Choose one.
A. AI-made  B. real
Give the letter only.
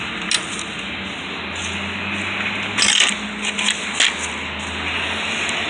B